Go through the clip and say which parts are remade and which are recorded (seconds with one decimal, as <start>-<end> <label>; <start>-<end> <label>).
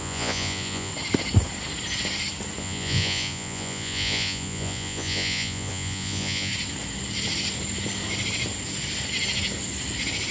0.0-0.9 remade; 0.9-2.6 recorded; 2.6-6.5 remade; 6.5-10.3 recorded